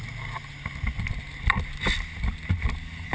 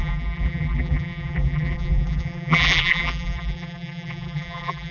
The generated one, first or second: second